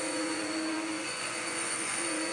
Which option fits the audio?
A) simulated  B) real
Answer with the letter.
A